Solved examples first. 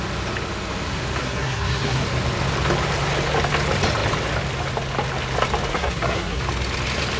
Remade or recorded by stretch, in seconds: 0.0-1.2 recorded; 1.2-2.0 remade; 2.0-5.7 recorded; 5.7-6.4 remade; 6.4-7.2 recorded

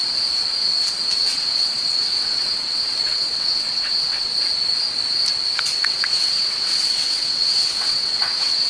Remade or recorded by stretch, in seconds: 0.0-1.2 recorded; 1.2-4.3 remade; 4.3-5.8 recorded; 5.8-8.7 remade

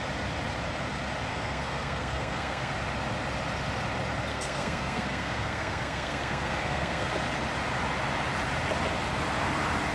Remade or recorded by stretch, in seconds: 0.0-1.3 recorded; 1.3-2.7 remade; 2.7-4.3 recorded; 4.3-7.1 remade; 7.1-9.9 recorded

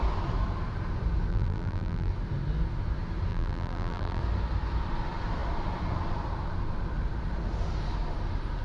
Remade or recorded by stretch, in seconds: 0.0-1.3 recorded; 1.3-2.1 remade; 2.1-3.3 recorded; 3.3-4.2 remade; 4.2-8.6 recorded